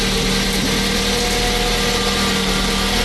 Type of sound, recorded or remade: recorded